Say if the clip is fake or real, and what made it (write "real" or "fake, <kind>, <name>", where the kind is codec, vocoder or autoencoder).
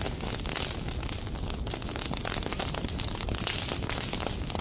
real